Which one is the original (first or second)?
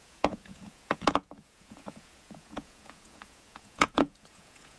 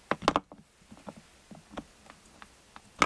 second